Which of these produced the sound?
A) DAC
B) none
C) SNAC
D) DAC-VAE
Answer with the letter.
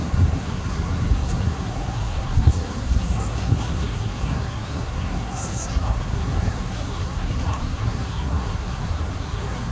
C